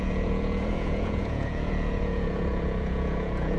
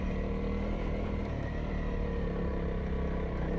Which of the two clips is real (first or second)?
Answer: second